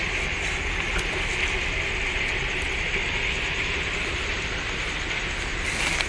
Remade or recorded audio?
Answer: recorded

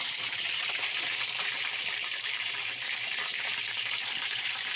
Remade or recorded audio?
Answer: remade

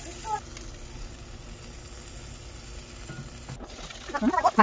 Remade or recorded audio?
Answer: recorded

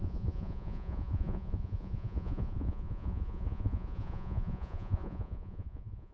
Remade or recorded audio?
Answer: remade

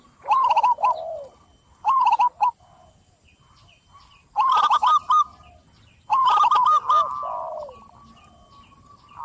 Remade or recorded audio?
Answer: recorded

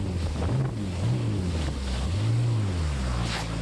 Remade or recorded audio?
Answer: recorded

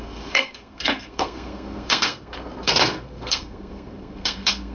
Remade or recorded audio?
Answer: remade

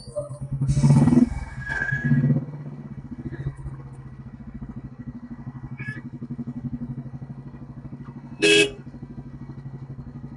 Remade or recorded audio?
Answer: remade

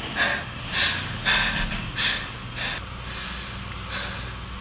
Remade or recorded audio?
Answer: recorded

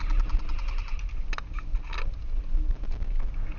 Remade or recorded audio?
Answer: recorded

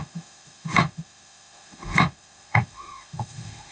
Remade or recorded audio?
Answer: remade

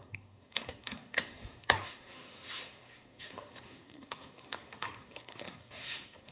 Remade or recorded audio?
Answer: remade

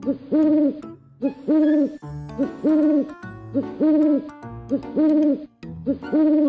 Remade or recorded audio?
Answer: recorded